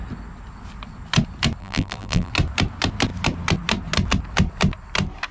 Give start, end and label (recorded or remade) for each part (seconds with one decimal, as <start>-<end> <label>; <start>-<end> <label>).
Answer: 0.0-1.6 recorded; 1.6-2.3 remade; 2.3-5.3 recorded